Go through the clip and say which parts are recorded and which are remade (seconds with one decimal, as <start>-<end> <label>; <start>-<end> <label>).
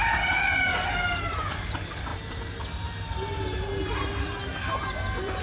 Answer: 0.0-5.4 recorded